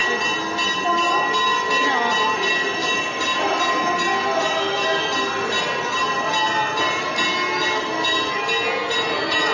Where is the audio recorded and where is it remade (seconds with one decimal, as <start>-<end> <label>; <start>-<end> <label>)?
0.0-9.5 recorded